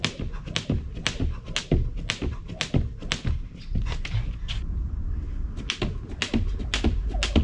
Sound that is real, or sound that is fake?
real